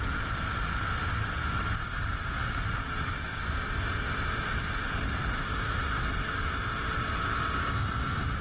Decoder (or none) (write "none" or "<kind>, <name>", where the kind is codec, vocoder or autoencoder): none